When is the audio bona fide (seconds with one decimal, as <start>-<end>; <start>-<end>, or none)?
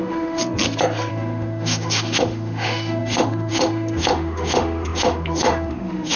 0.4-1.1